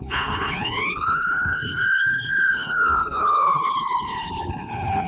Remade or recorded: remade